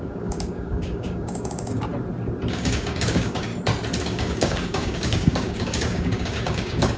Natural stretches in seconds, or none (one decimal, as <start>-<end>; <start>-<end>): 1.9-2.5; 3.5-4.0